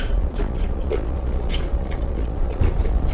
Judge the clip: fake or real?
fake